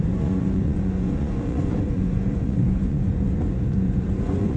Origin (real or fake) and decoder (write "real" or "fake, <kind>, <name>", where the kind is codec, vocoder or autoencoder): fake, vocoder, Vocos